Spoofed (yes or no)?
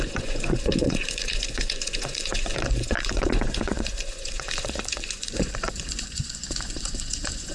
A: yes